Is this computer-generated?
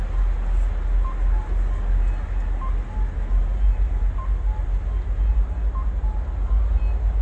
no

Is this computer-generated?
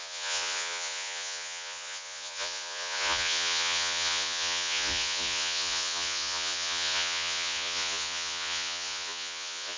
yes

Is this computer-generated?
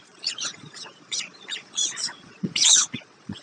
yes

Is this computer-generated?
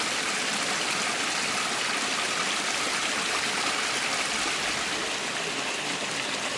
no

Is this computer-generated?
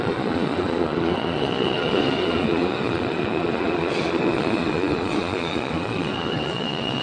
yes